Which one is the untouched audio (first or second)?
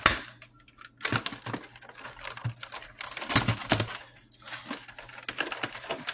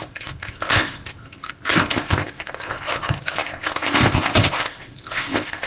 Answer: first